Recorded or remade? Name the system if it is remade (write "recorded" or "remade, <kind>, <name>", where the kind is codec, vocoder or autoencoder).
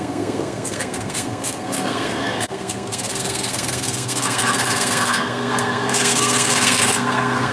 remade, codec, SNAC